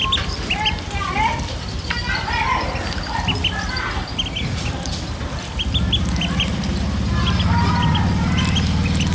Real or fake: real